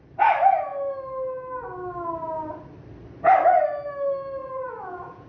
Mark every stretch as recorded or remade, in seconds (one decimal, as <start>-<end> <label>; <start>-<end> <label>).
0.0-4.4 recorded; 4.4-5.3 remade